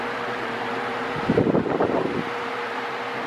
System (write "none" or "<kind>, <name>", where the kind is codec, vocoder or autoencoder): vocoder, BigVGAN v2